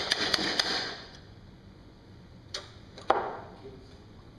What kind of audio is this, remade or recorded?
remade